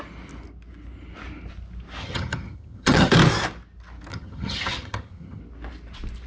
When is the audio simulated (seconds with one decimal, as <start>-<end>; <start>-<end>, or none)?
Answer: 2.0-3.1; 4.1-5.4